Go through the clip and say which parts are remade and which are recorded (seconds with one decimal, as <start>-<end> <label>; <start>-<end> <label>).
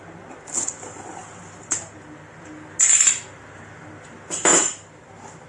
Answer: 0.0-4.5 recorded; 4.5-5.1 remade; 5.1-5.5 recorded